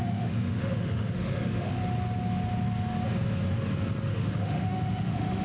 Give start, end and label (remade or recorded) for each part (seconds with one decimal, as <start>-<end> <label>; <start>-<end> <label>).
0.0-1.8 remade; 1.8-4.1 recorded; 4.1-5.4 remade